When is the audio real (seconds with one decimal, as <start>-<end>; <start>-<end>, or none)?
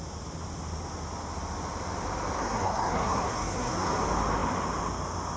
0.0-2.4; 3.9-5.4